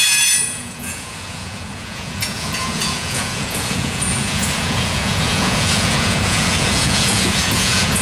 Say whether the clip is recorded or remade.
remade